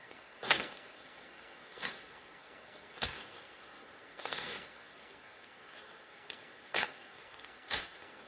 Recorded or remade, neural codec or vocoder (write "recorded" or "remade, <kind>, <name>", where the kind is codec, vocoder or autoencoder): remade, codec, SNAC